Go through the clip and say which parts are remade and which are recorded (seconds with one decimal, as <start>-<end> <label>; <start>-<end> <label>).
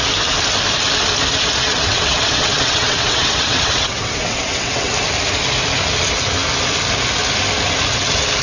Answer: 0.0-1.6 recorded; 1.6-4.9 remade; 4.9-8.4 recorded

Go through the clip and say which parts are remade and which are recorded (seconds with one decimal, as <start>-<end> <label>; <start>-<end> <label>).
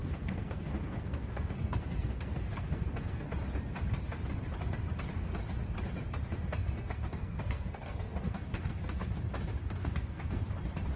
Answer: 0.0-3.3 remade; 3.3-6.6 recorded; 6.6-9.1 remade; 9.1-9.8 recorded; 9.8-10.4 remade; 10.4-11.0 recorded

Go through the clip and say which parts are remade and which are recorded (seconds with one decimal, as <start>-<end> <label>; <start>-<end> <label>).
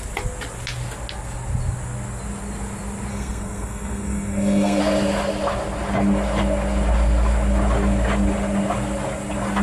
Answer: 0.0-3.1 recorded; 3.1-4.8 remade; 4.8-9.6 recorded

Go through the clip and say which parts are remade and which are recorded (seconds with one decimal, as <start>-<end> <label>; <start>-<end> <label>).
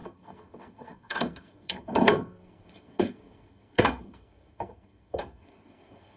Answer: 0.0-6.2 remade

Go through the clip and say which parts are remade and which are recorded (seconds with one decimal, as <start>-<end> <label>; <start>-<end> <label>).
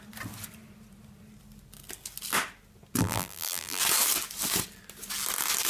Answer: 0.0-3.0 recorded; 3.0-3.8 remade; 3.8-5.7 recorded